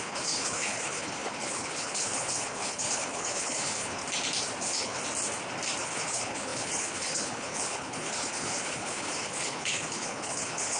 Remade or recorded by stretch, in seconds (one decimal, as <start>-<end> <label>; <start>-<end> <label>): 0.0-4.0 remade; 4.0-4.6 recorded; 4.6-5.0 remade; 5.0-5.8 recorded; 5.8-10.8 remade